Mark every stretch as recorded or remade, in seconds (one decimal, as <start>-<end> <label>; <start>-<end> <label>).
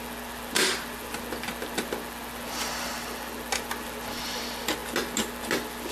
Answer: 0.0-5.9 recorded